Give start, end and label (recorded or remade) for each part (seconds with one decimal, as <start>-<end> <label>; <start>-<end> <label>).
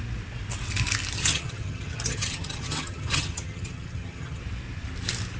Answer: 0.0-1.2 recorded; 1.2-4.4 remade; 4.4-5.4 recorded